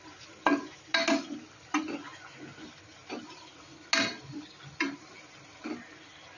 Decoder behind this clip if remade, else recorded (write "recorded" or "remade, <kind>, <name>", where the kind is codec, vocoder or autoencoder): recorded